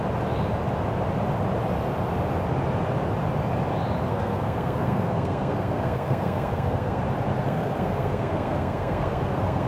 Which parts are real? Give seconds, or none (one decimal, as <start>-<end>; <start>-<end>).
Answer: 0.0-4.1; 7.0-7.4